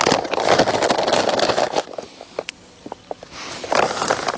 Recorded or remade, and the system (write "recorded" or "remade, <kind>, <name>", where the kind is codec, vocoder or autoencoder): recorded